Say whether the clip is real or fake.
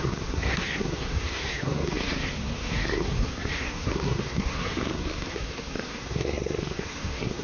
fake